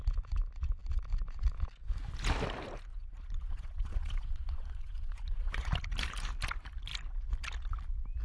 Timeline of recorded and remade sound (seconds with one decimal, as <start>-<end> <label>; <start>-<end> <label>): 0.0-2.9 recorded; 2.9-5.7 remade; 5.7-8.2 recorded